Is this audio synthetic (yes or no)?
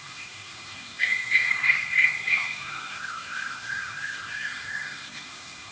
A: yes